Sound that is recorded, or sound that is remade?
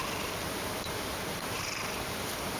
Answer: remade